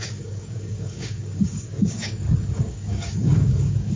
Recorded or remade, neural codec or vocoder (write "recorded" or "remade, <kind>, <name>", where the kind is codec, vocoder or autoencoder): remade, codec, DAC